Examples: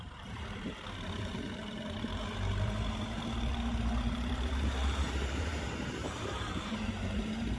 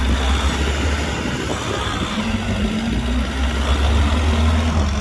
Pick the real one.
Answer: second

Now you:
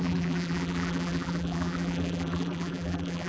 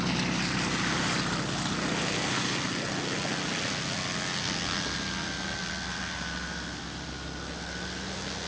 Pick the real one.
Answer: second